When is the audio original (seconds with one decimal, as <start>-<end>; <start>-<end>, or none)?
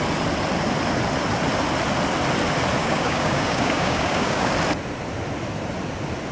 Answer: 0.0-2.8; 4.5-6.3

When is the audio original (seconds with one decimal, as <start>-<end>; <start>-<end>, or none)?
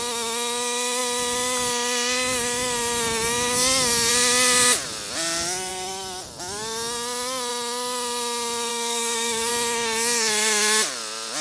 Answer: 0.0-8.7; 9.5-11.4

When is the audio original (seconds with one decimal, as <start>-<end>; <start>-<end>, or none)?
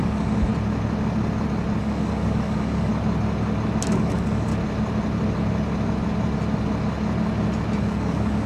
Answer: 0.5-1.8; 2.9-3.9; 4.5-7.8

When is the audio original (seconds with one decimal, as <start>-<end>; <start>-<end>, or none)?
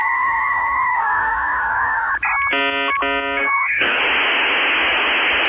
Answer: 2.1-3.4; 4.0-5.5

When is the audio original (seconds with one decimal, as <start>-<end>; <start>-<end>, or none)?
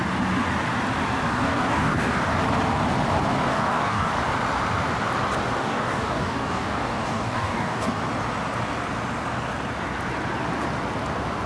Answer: 0.0-1.3; 2.4-3.5; 4.1-5.6; 8.0-11.5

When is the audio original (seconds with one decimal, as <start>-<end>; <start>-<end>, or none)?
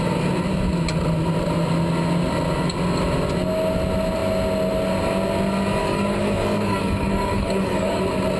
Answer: 0.0-5.8; 8.0-8.4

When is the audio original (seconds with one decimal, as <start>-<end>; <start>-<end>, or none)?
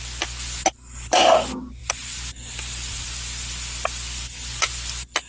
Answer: 0.0-5.3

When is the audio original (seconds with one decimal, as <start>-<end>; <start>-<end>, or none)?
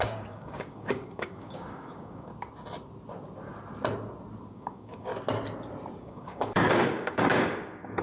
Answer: 2.3-4.5; 5.1-6.0